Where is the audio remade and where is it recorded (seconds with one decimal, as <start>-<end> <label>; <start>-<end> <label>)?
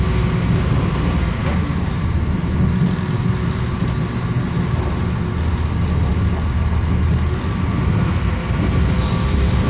0.0-1.4 recorded; 1.4-1.9 remade; 1.9-9.7 recorded